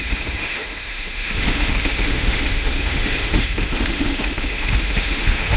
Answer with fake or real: fake